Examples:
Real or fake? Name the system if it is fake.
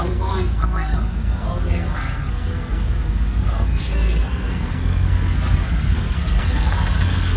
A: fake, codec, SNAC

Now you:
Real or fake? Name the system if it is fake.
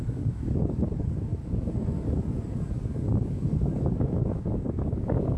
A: fake, codec, DAC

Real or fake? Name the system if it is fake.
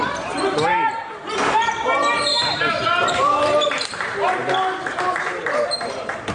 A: fake, vocoder, BigVGAN v2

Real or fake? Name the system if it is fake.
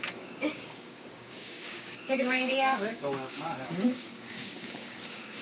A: fake, codec, DAC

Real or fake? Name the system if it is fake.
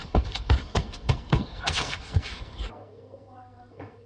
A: fake, codec, SNAC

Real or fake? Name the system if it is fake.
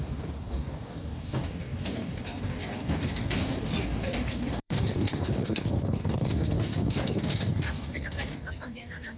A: fake, codec, DAC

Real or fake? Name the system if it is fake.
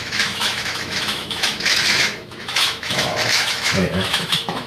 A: fake, autoencoder, DAC-VAE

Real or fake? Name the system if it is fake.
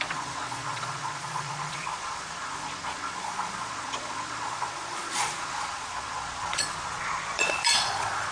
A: fake, vocoder, Vocos